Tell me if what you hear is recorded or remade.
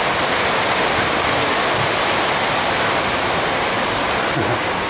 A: recorded